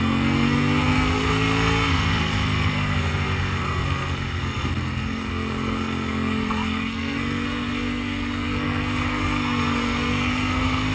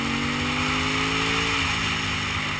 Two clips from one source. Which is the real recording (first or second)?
second